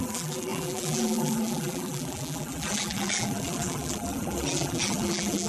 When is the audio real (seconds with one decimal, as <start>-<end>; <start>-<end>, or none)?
none